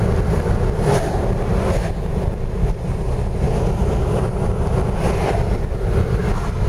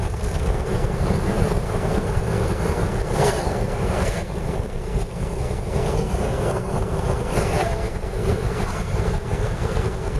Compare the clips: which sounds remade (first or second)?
second